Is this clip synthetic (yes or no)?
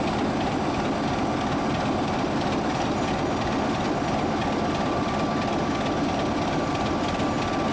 no